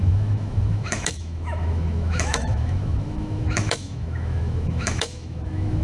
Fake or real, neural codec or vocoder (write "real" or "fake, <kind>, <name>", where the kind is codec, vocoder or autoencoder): fake, autoencoder, DAC-VAE